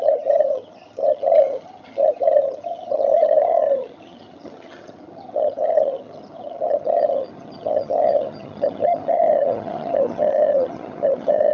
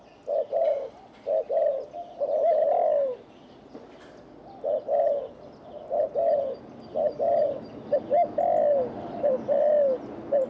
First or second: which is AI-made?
first